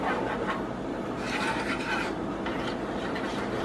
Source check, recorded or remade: remade